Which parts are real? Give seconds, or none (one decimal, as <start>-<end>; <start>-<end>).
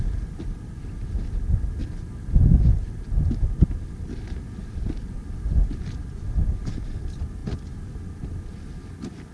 0.0-9.3